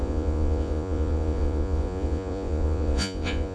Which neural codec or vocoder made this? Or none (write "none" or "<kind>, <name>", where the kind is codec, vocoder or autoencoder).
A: vocoder, Vocos